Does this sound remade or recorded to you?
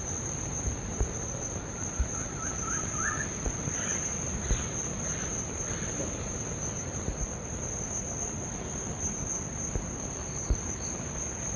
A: recorded